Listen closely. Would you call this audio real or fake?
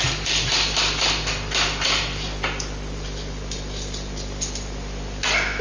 real